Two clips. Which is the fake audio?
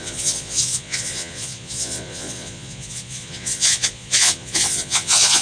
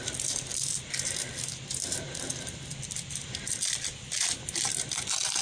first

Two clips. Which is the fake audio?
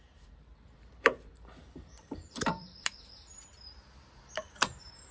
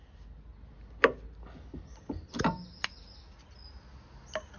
first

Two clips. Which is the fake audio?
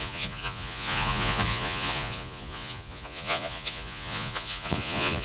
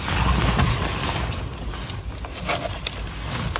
first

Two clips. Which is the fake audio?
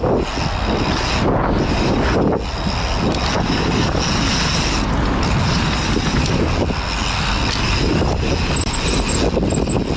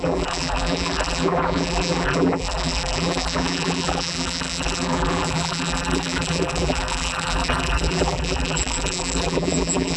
second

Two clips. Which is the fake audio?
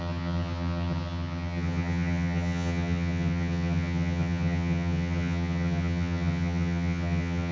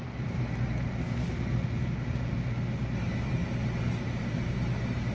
first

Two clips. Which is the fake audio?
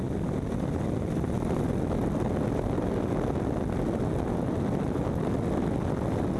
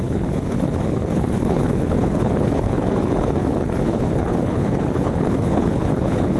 second